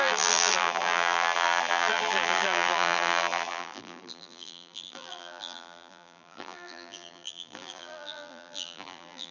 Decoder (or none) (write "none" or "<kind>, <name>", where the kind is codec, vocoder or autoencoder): vocoder, BigVGAN v2